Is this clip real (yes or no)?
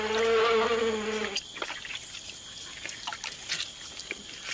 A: yes